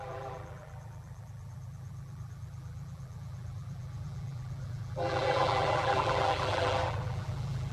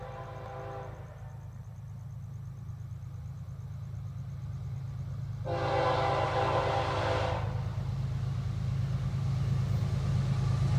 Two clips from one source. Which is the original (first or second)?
second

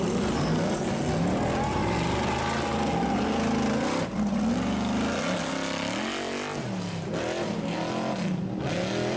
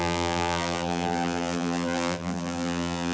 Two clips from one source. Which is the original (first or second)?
first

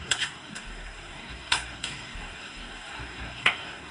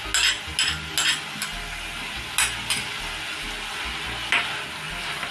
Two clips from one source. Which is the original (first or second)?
second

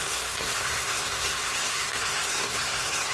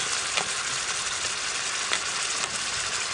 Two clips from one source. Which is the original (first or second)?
second